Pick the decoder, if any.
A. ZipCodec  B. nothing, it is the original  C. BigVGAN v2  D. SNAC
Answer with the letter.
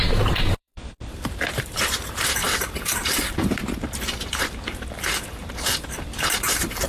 C